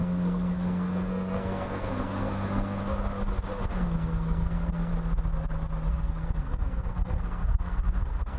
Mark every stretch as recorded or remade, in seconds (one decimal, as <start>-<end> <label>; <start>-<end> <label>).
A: 0.0-2.8 remade; 2.8-3.6 recorded; 3.6-4.9 remade; 4.9-5.9 recorded; 5.9-8.4 remade